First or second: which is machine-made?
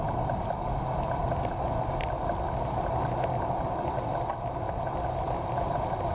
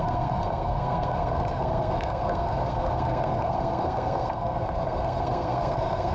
second